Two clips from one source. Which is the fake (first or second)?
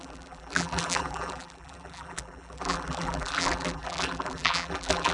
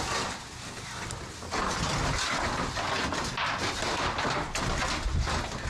first